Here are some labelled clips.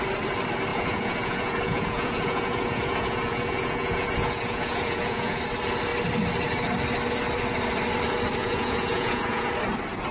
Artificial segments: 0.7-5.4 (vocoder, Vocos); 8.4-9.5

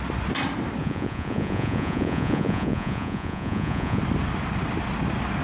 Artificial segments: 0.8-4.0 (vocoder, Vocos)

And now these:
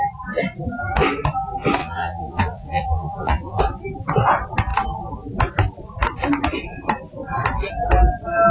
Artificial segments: 1.8-3.6 (vocoder, Vocos)

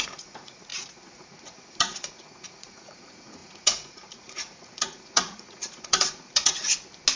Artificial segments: 0.0-6.6 (vocoder, Vocos)